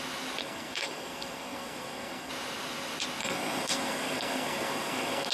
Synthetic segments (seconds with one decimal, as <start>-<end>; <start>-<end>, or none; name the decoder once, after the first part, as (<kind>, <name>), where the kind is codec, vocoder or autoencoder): 0.4-2.3 (codec, SNAC); 3.2-5.3

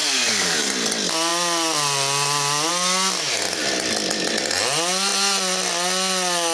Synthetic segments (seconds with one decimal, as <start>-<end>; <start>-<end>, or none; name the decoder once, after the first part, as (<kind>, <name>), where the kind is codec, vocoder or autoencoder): 0.0-0.7 (codec, DAC)